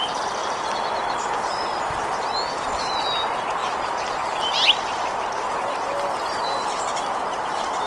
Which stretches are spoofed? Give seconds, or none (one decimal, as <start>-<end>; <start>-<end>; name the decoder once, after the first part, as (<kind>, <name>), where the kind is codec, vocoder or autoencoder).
0.4-2.0 (vocoder, BigVGAN v2); 3.6-6.4